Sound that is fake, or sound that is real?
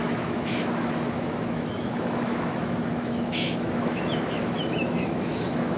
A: fake